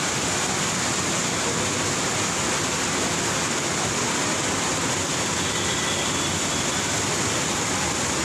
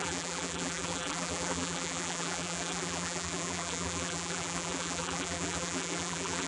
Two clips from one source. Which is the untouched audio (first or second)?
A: first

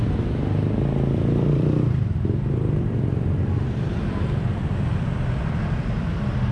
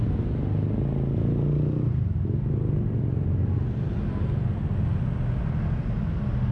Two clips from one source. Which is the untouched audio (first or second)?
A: second